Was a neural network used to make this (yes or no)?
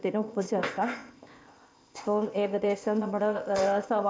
yes